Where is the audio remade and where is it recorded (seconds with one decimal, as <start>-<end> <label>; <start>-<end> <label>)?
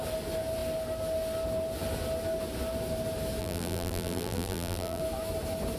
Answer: 0.0-3.4 recorded; 3.4-5.0 remade; 5.0-5.8 recorded